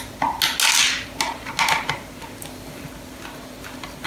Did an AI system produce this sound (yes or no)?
no